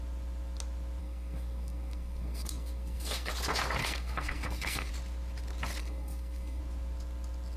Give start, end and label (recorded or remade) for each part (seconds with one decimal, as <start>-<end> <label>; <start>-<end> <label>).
0.0-1.0 recorded; 1.0-3.3 remade; 3.3-3.8 recorded; 3.8-4.9 remade; 4.9-5.8 recorded; 5.8-6.6 remade; 6.6-7.6 recorded